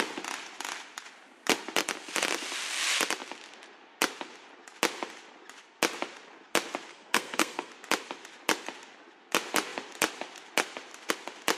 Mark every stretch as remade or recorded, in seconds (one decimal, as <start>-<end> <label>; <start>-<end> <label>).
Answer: 0.0-6.9 recorded; 6.9-7.7 remade; 7.7-11.6 recorded